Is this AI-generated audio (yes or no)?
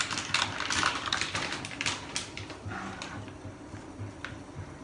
no